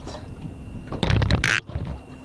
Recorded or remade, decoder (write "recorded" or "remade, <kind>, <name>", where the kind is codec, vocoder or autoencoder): recorded